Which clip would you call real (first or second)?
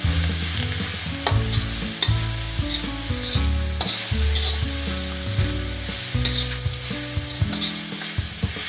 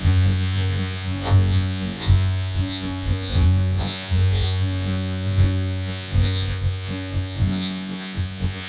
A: first